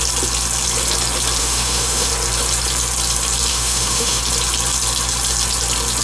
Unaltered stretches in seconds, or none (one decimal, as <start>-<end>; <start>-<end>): 0.0-1.4; 2.1-3.5; 4.2-6.0